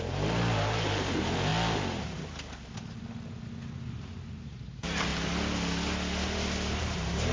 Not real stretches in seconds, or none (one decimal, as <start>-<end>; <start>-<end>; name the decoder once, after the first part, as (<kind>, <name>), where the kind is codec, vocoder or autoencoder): 0.0-1.5 (vocoder, BigVGAN v2); 4.3-5.1; 6.8-7.3